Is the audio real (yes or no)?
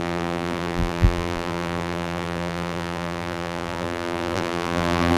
no